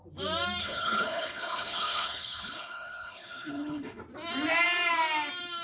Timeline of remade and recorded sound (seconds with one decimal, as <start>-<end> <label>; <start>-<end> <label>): 0.0-0.6 recorded; 0.6-4.0 remade; 4.0-5.6 recorded